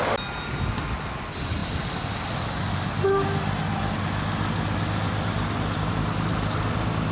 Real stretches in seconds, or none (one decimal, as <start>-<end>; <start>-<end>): 0.0-7.1